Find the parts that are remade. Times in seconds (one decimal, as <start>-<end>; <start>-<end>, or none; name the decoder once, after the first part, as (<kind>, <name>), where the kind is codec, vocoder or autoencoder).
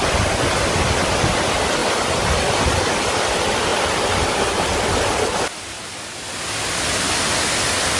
none